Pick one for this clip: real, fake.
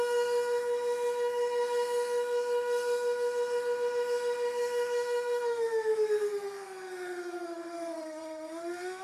fake